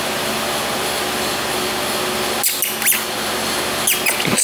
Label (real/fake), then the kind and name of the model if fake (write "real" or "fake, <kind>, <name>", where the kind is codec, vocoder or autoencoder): real